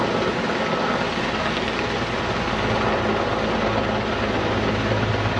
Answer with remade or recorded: recorded